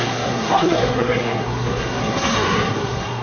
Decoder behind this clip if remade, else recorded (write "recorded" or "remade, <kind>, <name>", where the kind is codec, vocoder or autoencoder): remade, codec, SNAC